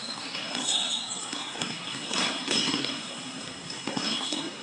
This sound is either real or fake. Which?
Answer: fake